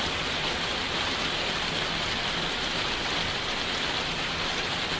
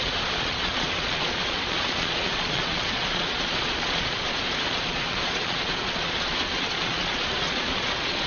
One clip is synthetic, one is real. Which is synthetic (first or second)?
second